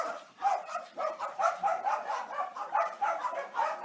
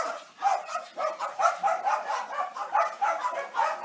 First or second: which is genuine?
second